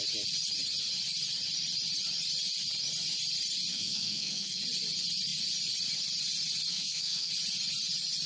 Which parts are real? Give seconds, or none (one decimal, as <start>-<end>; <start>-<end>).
0.0-3.7; 4.6-6.7; 7.3-8.3